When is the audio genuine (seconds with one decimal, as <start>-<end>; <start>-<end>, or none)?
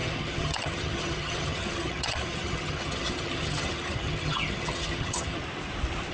5.4-6.1